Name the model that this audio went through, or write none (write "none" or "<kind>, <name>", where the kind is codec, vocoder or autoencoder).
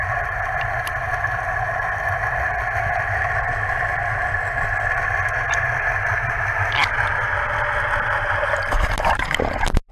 none